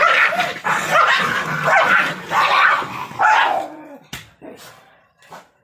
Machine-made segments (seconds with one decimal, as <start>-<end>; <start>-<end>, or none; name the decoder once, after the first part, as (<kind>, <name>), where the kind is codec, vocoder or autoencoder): 0.0-0.9 (vocoder, BigVGAN v2); 4.3-5.6